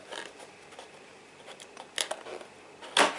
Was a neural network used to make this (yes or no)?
no